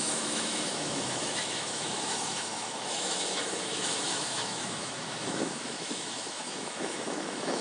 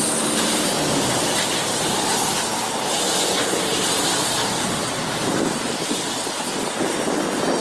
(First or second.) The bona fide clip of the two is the second